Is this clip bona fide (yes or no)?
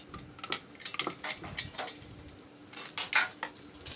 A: yes